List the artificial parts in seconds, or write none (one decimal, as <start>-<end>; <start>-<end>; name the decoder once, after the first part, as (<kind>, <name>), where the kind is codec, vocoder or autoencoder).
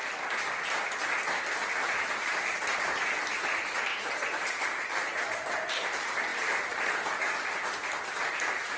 1.7-8.8 (vocoder, BigVGAN v2)